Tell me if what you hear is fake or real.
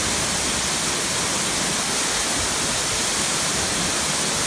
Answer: real